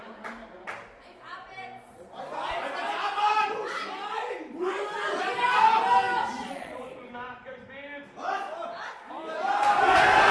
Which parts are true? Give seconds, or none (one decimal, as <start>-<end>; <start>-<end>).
0.0-6.4; 7.1-10.3